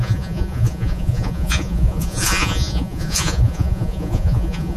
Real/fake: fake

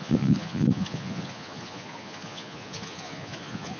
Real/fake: fake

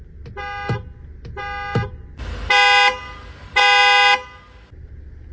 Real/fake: real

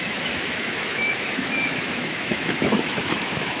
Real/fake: fake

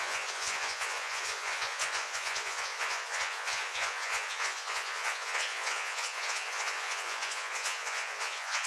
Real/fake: fake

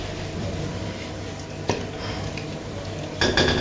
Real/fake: real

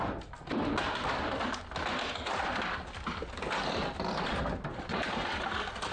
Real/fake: real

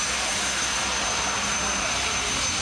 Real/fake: real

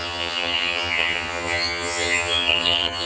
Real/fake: fake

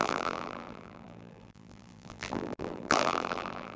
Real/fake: fake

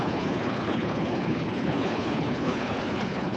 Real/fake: fake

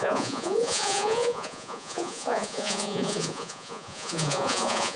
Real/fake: fake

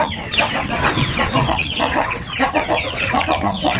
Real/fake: fake